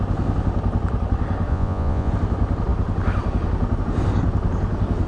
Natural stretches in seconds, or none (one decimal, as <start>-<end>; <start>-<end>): 0.0-1.5; 2.1-5.1